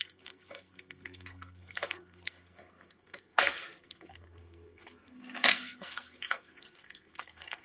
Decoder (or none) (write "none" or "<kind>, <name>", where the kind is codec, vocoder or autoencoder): codec, SNAC